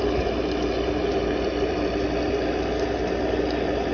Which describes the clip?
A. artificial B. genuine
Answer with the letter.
B